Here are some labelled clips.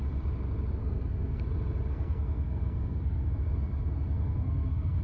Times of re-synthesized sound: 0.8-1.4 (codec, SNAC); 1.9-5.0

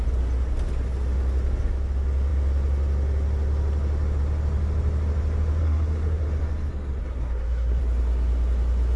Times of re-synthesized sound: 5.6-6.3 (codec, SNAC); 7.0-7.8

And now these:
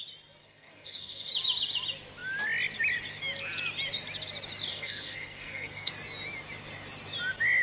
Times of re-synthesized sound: 0.4-1.3 (codec, SNAC); 4.7-5.9

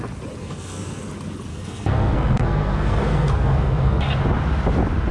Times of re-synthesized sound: 0.4-1.0 (codec, SNAC); 1.5-4.0

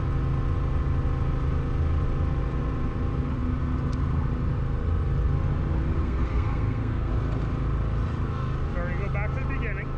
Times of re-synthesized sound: 6.0-7.1 (codec, SNAC)

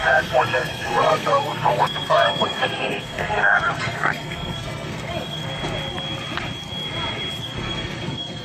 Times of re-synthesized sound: 0.0-5.4 (codec, SNAC); 7.4-8.4

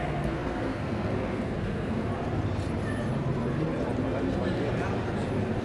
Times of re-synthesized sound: 0.0-2.1 (codec, SNAC)